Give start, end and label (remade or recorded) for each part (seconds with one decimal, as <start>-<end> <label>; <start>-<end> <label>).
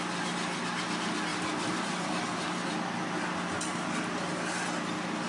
0.0-1.3 recorded; 1.3-2.1 remade; 2.1-5.3 recorded